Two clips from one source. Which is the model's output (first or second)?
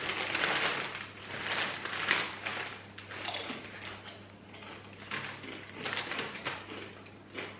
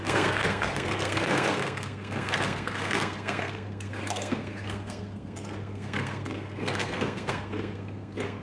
second